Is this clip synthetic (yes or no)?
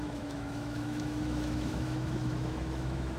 yes